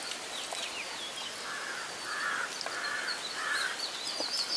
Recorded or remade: recorded